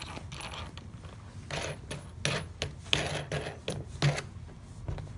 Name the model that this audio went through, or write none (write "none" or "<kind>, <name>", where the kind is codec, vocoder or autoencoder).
none